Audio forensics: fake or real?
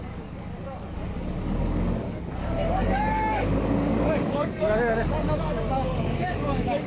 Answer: fake